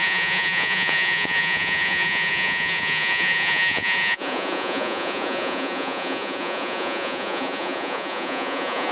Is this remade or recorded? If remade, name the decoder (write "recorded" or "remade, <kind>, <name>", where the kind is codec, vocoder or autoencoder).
remade, vocoder, Vocos